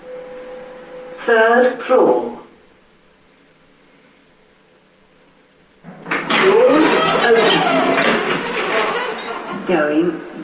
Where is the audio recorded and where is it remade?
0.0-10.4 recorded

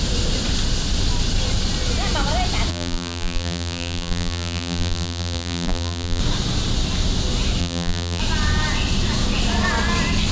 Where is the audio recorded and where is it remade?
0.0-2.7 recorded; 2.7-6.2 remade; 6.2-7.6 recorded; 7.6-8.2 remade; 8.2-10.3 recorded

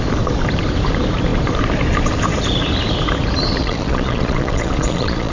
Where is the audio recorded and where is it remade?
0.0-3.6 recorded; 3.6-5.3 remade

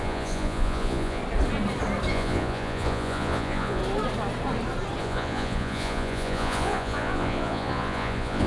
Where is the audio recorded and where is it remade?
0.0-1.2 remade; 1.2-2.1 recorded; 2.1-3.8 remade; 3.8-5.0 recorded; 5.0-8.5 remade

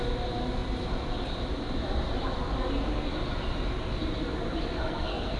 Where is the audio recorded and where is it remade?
0.0-4.8 recorded; 4.8-5.4 remade

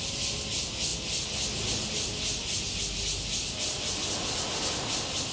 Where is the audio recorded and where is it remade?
0.0-5.3 recorded

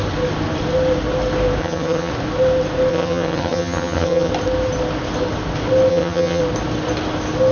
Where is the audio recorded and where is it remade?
0.0-1.6 recorded; 1.6-2.1 remade; 2.1-2.9 recorded; 2.9-4.3 remade; 4.3-5.9 recorded; 5.9-6.4 remade; 6.4-7.5 recorded